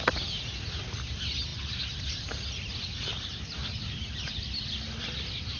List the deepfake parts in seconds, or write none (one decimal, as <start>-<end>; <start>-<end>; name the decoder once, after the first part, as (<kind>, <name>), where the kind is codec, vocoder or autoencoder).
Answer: none